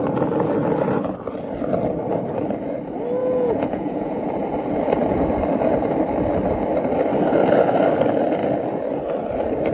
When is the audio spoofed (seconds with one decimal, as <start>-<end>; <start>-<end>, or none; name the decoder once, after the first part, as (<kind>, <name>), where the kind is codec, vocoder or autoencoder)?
3.2-4.3 (vocoder, Vocos)